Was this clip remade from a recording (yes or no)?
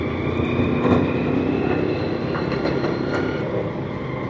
no